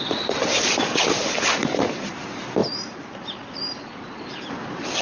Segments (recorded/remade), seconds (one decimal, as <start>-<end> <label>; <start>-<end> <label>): 0.0-1.6 recorded; 1.6-2.2 remade; 2.2-2.6 recorded; 2.6-4.5 remade; 4.5-5.0 recorded